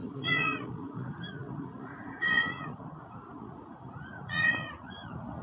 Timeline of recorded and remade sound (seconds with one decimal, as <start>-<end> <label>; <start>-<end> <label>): 0.0-5.4 remade